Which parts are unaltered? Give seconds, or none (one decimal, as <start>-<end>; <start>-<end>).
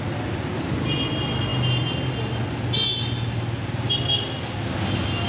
0.0-5.3